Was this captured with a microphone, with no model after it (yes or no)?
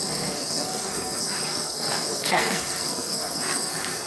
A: no